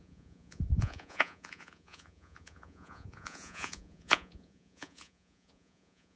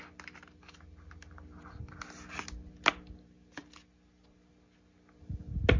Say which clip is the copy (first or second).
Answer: first